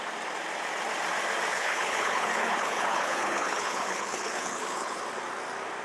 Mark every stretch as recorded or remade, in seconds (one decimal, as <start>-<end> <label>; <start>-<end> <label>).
0.0-1.5 recorded; 1.5-5.0 remade; 5.0-5.8 recorded